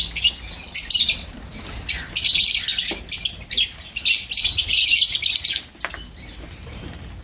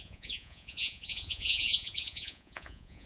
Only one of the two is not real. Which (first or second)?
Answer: second